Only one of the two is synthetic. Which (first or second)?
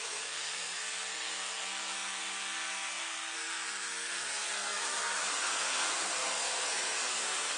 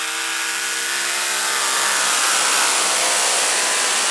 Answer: first